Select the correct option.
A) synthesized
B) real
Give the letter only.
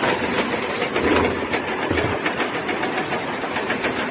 B